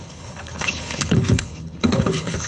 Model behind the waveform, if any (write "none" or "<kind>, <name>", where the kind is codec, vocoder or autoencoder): codec, HILCodec